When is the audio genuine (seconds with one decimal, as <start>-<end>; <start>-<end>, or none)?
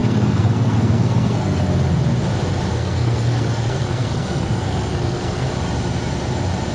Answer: 1.6-2.7; 5.5-6.7